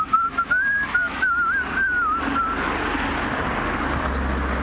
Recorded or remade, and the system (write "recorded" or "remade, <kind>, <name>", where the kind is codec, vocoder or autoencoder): recorded